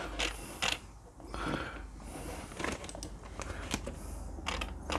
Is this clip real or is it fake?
real